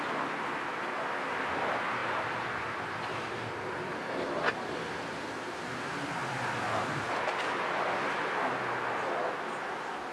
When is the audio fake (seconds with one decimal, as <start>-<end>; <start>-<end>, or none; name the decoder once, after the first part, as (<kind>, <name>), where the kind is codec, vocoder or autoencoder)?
2.0-3.4 (vocoder, BigVGAN v2); 6.2-8.5